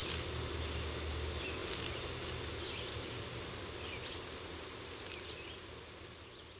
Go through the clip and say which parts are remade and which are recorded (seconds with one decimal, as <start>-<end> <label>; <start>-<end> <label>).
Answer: 0.0-6.6 recorded